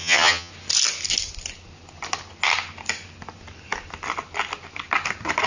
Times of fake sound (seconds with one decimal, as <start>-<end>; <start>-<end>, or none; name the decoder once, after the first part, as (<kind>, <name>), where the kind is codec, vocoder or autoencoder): 0.0-0.5 (vocoder, HiFi-GAN)